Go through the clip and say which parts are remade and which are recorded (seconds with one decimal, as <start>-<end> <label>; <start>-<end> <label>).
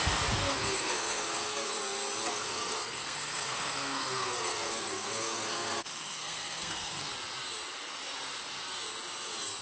0.0-0.4 recorded; 0.4-1.8 remade; 1.8-2.3 recorded; 2.3-7.1 remade; 7.1-9.6 recorded